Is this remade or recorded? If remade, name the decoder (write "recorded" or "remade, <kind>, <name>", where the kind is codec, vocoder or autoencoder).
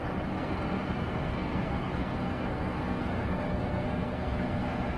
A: remade, codec, SNAC